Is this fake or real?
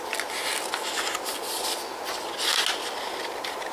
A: real